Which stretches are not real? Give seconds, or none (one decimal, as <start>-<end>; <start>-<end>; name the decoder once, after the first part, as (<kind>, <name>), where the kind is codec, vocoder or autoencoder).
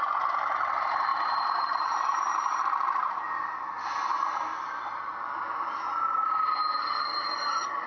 none